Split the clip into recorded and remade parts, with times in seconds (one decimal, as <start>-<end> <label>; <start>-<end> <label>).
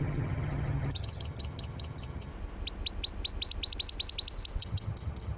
0.0-2.3 remade; 2.3-4.6 recorded; 4.6-5.4 remade